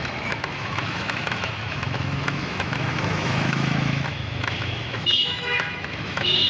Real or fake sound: fake